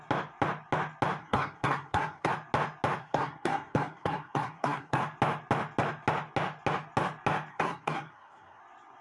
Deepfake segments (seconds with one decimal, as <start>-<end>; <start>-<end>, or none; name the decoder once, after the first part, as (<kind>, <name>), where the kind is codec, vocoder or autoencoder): 1.2-2.3 (codec, SNAC); 3.0-5.0; 7.5-8.6